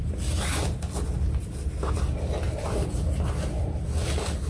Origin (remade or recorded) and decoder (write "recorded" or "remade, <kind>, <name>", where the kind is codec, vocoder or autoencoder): recorded